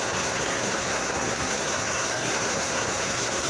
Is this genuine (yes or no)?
no